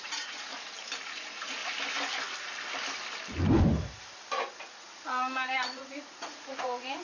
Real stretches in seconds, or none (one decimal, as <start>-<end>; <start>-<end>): 0.5-1.1; 1.6-4.5